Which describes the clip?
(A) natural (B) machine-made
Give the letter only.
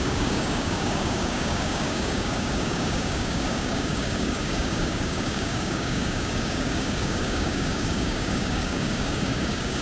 B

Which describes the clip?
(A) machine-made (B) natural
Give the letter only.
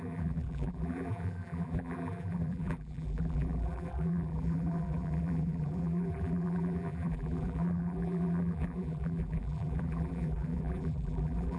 A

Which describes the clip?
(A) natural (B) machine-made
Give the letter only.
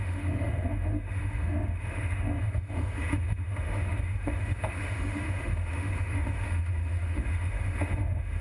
B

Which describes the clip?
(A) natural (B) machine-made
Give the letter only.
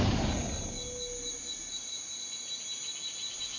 A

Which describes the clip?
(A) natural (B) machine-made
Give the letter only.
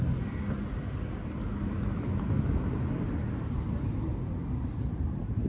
A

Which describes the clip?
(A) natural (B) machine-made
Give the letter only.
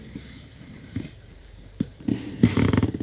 B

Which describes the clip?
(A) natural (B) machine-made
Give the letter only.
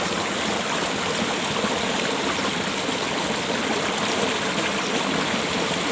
A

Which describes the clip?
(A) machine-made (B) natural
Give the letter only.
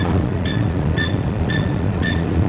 A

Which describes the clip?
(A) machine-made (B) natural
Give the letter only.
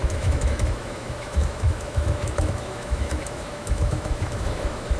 A